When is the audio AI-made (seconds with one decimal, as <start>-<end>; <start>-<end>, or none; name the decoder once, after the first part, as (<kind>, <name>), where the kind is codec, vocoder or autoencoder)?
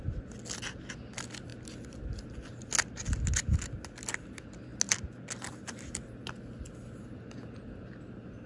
none